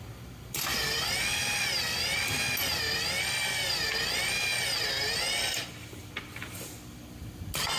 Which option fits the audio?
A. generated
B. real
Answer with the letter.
B